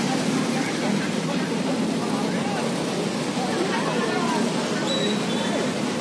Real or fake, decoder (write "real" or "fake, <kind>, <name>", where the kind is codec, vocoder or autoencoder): real